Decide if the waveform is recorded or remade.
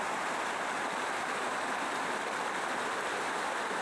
recorded